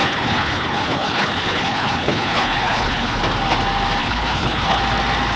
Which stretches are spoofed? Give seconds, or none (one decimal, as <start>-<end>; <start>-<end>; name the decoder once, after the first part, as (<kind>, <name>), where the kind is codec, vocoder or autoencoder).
0.0-3.2 (codec, HILCodec); 4.0-4.8